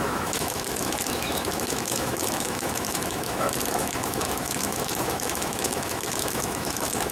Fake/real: fake